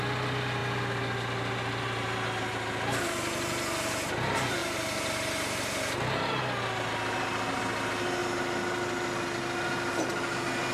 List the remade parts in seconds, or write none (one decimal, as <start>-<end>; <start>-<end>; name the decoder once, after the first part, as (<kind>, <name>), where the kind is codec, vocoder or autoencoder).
none